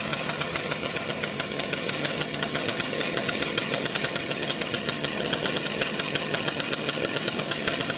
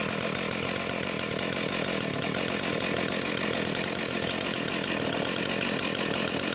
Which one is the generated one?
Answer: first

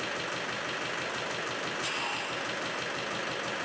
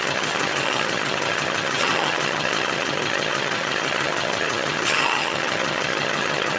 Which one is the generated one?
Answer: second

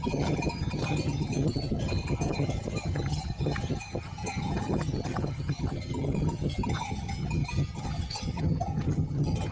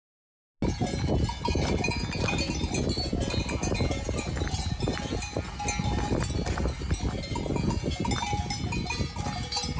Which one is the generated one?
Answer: first